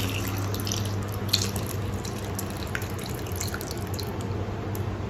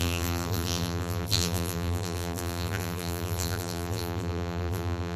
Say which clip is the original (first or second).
first